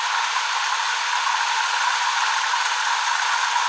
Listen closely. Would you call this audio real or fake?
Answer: real